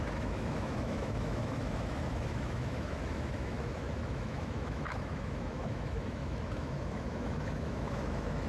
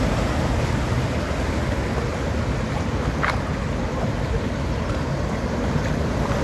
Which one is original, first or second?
second